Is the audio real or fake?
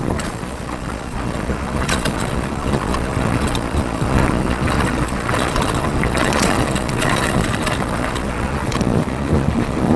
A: fake